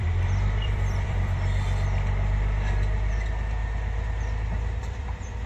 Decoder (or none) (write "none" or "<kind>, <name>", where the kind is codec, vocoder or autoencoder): vocoder, BigVGAN v2